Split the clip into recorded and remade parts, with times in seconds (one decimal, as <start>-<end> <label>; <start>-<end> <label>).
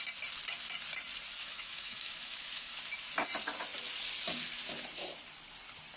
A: 0.0-1.4 recorded; 1.4-2.8 remade; 2.8-6.0 recorded